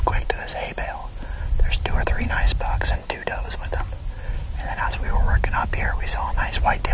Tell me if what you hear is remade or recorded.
recorded